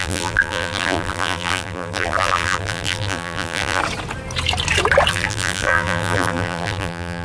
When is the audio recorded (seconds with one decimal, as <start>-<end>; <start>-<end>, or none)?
3.8-5.1